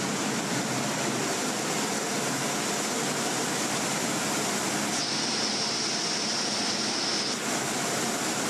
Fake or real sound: real